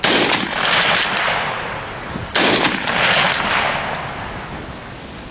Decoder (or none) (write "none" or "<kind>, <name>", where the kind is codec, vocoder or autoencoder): none